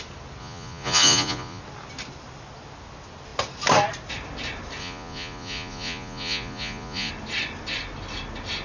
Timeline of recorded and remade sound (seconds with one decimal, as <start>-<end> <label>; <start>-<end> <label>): 0.0-0.4 recorded; 0.4-1.6 remade; 1.6-4.8 recorded; 4.8-7.1 remade; 7.1-8.6 recorded